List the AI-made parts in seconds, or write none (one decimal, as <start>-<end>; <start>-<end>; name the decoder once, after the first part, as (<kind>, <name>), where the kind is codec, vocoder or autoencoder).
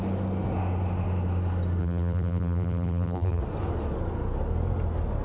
1.8-3.4 (vocoder, BigVGAN v2)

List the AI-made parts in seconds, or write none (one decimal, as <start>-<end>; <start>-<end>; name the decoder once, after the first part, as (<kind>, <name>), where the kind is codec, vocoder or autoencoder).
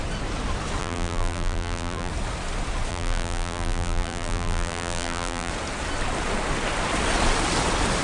0.8-2.1 (vocoder, BigVGAN v2); 2.9-5.5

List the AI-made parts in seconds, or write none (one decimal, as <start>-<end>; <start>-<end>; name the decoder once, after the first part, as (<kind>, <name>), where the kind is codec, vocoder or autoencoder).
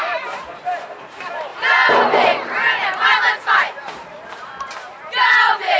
0.0-5.8 (vocoder, BigVGAN v2)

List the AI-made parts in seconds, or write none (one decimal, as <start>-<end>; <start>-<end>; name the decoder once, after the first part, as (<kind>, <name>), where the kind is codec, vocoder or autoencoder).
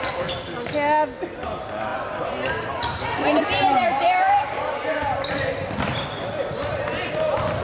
1.9-5.3 (vocoder, BigVGAN v2)